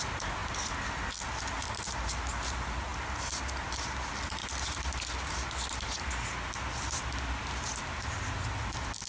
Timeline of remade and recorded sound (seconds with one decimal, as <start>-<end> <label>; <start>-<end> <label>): 0.0-9.1 recorded